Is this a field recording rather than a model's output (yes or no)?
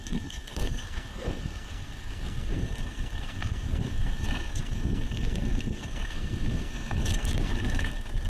no